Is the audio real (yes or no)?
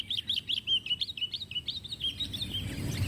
yes